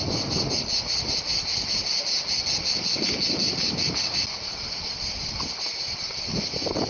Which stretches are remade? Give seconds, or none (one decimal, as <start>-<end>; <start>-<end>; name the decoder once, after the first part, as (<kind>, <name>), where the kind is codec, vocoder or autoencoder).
none